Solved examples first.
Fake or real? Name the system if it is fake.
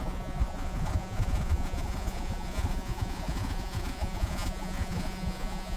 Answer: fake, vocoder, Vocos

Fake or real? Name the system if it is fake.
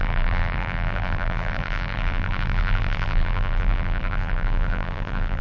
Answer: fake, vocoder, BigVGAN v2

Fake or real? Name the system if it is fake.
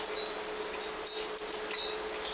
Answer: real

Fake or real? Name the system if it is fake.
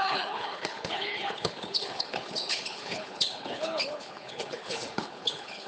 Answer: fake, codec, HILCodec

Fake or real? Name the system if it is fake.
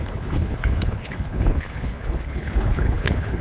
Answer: fake, codec, HILCodec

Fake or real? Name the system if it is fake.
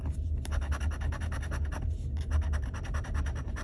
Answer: real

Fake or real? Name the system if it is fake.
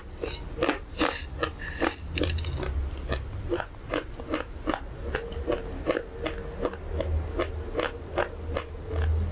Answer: real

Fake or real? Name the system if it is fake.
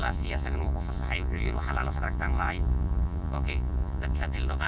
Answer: fake, vocoder, Vocos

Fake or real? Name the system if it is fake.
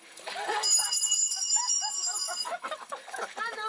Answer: fake, codec, DAC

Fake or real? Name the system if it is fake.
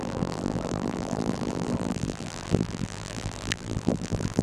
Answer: fake, vocoder, BigVGAN v2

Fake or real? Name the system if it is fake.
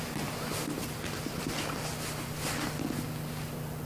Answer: real